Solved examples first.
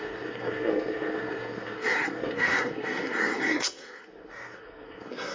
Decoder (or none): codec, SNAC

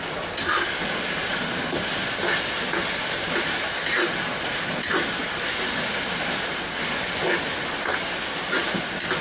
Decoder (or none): none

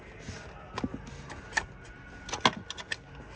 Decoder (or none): none